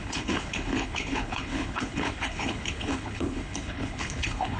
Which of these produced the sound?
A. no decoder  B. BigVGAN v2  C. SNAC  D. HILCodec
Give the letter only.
D